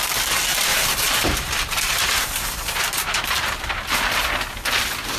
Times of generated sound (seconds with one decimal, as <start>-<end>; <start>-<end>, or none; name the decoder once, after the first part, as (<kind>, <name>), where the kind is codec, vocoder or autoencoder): 0.7-3.8 (vocoder, BigVGAN v2)

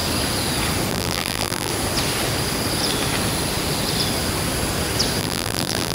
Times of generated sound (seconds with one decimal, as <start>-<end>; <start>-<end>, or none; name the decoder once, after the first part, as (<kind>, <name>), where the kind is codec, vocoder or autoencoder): 0.9-1.7 (vocoder, BigVGAN v2); 5.2-5.9

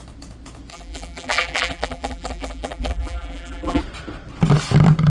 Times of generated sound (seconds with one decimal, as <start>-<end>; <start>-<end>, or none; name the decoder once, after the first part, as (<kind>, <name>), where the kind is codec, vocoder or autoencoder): 0.7-3.8 (vocoder, BigVGAN v2)

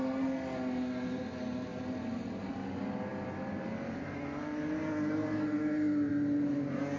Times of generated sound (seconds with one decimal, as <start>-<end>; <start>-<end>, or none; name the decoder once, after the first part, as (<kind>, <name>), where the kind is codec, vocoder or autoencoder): none